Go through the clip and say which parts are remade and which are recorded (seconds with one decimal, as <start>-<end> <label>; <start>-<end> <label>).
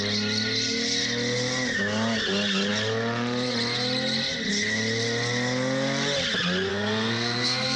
0.0-6.7 recorded; 6.7-7.8 remade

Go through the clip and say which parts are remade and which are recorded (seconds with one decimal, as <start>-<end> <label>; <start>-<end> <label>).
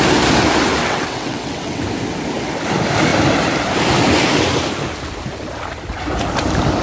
0.0-0.8 recorded; 0.8-1.8 remade; 1.8-6.8 recorded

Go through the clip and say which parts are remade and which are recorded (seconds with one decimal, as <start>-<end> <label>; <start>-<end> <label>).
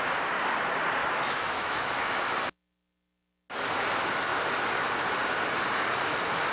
0.0-1.0 recorded; 1.0-2.2 remade; 2.2-6.5 recorded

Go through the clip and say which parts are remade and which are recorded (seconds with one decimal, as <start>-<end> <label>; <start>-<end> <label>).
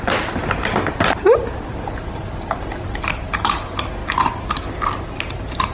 0.0-0.4 recorded; 0.4-2.2 remade; 2.2-4.0 recorded; 4.0-5.3 remade; 5.3-5.7 recorded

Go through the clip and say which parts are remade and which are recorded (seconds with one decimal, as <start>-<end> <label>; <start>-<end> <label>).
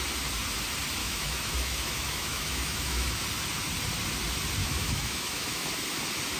0.0-1.0 recorded; 1.0-3.2 remade; 3.2-4.6 recorded; 4.6-5.7 remade; 5.7-6.4 recorded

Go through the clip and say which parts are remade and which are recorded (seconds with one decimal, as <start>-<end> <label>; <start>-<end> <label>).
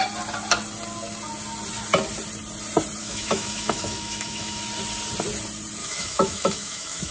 0.0-3.0 recorded; 3.0-4.6 remade; 4.6-5.8 recorded; 5.8-7.1 remade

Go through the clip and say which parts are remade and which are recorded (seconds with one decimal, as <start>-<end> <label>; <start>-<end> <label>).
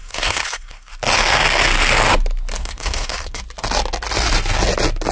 0.0-0.9 remade; 0.9-2.6 recorded; 2.6-3.4 remade; 3.4-5.1 recorded